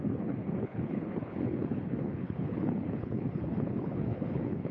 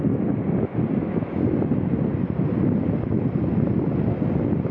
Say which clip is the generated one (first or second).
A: first